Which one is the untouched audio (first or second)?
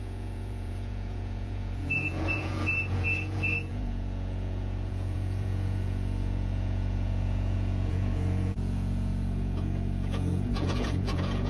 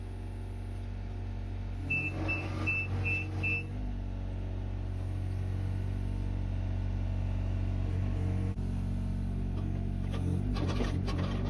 second